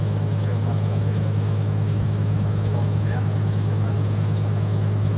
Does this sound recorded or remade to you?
remade